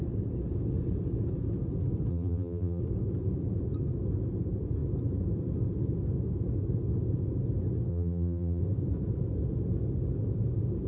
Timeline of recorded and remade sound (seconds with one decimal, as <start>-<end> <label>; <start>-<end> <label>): 0.0-2.1 recorded; 2.1-2.8 remade; 2.8-7.9 recorded; 7.9-8.6 remade; 8.6-10.9 recorded

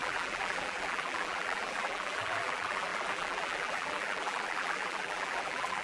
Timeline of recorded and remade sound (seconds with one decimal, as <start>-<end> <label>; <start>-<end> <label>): 0.0-5.8 remade

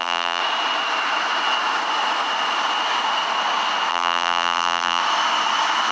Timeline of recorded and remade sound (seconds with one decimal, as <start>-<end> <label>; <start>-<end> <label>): 0.0-0.4 remade; 0.4-3.9 recorded; 3.9-5.0 remade; 5.0-5.9 recorded

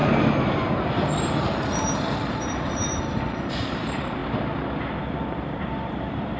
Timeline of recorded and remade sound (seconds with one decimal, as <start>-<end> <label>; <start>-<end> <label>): 0.0-0.6 recorded; 0.6-4.2 remade; 4.2-5.0 recorded; 5.0-6.4 remade

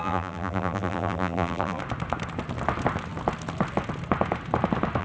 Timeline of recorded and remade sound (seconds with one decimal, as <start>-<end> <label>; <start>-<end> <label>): 0.0-1.8 remade; 1.8-5.0 recorded